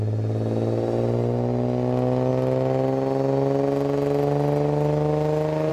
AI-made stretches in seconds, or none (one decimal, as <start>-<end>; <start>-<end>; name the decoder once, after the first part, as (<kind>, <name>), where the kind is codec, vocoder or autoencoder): none